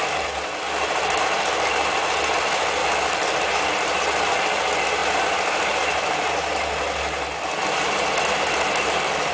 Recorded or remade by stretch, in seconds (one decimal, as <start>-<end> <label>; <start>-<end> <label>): 0.0-9.3 recorded